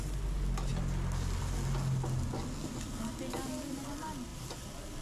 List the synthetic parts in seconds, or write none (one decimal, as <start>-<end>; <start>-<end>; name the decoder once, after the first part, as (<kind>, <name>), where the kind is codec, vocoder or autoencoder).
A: none